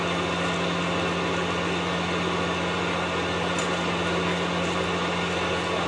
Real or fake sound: real